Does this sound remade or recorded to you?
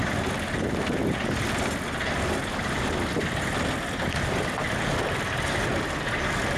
recorded